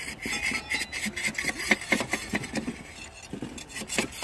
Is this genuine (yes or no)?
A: yes